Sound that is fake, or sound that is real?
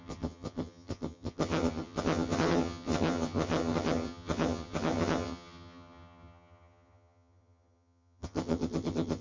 fake